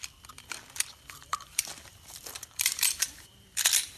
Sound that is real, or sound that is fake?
fake